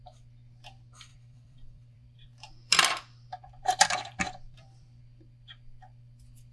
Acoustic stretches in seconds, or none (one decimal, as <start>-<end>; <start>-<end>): 0.0-1.1; 5.0-6.5